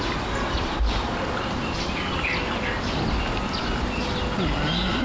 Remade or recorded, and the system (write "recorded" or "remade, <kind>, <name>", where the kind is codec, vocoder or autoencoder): recorded